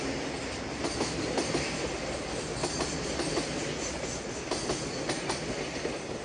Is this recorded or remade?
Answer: recorded